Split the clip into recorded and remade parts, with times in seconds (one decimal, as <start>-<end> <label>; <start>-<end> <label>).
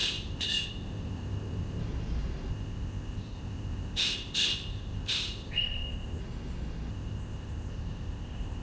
0.0-1.8 remade; 1.8-2.5 recorded; 2.5-6.2 remade; 6.2-6.9 recorded; 6.9-8.6 remade